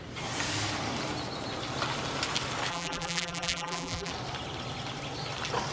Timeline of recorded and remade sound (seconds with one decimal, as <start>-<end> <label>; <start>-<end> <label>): 0.0-2.7 recorded; 2.7-4.1 remade; 4.1-5.7 recorded